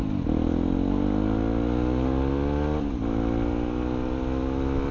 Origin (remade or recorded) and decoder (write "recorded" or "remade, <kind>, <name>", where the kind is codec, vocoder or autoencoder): recorded